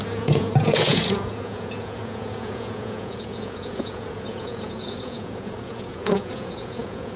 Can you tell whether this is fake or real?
fake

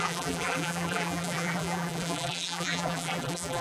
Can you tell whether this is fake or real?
fake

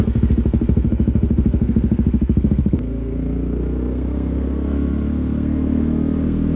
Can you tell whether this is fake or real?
fake